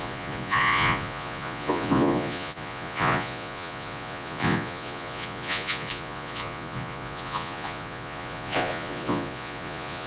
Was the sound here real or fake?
fake